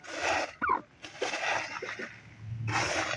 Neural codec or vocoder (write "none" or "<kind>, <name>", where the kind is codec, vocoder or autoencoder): none